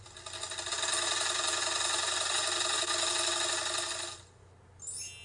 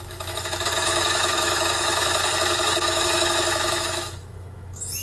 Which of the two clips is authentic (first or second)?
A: first